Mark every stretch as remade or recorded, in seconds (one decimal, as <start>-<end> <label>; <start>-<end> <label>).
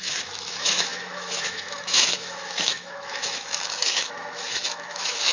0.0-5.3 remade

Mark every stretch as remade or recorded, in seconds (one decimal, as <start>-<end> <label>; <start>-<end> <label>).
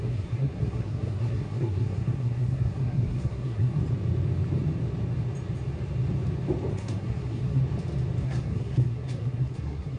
0.0-3.8 remade; 3.8-6.7 recorded; 6.7-7.6 remade; 7.6-8.2 recorded; 8.2-10.0 remade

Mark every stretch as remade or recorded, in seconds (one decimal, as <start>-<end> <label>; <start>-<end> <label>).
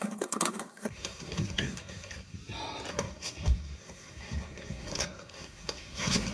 0.0-2.4 remade; 2.4-2.9 recorded; 2.9-6.3 remade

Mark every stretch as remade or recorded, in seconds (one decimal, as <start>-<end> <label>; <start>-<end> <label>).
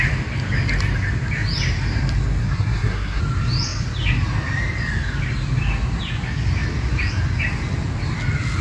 0.0-2.4 recorded; 2.4-3.2 remade; 3.2-8.6 recorded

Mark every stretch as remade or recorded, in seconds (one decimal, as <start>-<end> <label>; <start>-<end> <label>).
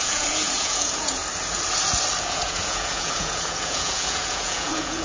0.0-1.2 remade; 1.2-2.2 recorded; 2.2-5.0 remade